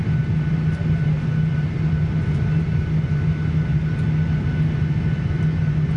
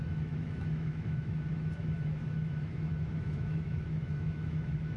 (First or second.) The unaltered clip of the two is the first